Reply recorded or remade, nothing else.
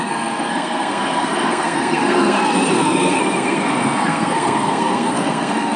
remade